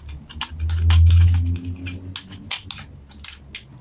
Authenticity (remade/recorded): recorded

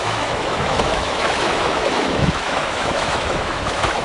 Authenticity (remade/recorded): remade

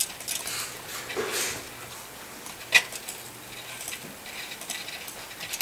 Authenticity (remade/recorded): recorded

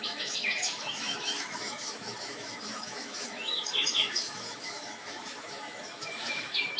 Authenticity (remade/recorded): remade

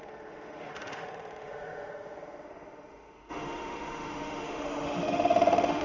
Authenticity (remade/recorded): remade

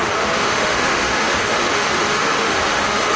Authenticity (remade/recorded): remade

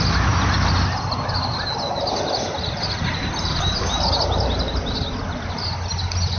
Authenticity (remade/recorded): recorded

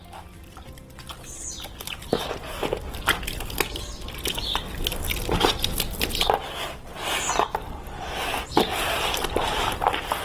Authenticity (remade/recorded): recorded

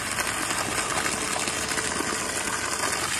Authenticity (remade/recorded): recorded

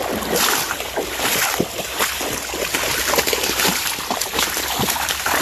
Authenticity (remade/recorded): recorded